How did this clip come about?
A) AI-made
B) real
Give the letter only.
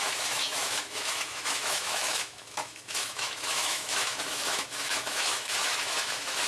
A